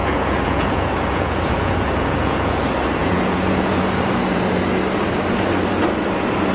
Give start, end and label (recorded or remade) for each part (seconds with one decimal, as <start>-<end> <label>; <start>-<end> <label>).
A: 0.0-2.6 remade; 2.6-3.0 recorded; 3.0-4.0 remade; 4.0-6.5 recorded